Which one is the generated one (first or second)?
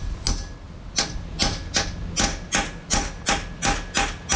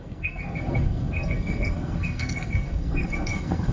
second